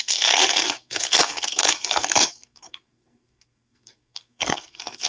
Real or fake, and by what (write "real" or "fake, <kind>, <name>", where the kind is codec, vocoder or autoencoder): fake, codec, SNAC